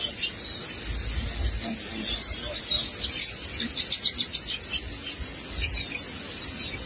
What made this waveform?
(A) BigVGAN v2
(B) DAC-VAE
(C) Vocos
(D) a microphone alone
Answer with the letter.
D